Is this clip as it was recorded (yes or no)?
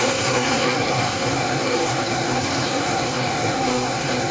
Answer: no